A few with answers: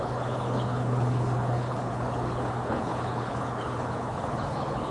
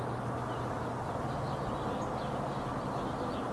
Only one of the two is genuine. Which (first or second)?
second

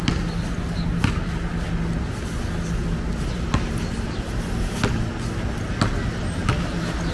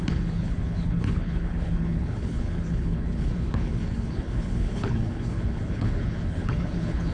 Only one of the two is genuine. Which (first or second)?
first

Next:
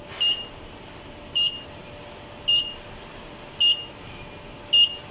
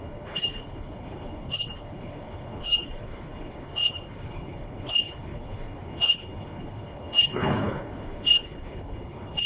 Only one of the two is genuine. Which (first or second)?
first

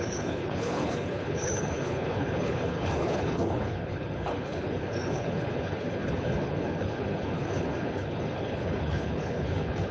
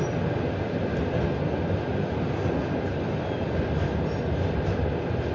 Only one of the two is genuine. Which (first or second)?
second